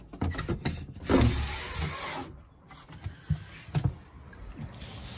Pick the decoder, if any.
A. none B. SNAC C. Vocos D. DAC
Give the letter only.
A